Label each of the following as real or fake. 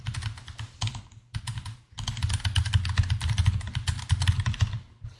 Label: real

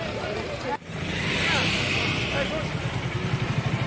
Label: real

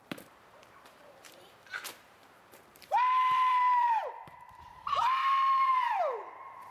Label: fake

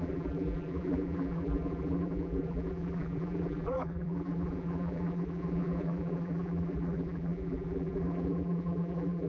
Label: fake